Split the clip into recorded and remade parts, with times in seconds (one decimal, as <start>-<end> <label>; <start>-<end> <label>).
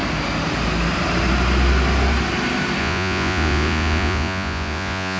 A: 0.0-2.8 recorded; 2.8-5.2 remade